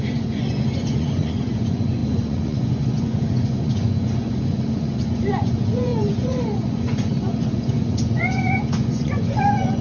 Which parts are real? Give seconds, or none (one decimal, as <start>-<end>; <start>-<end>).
none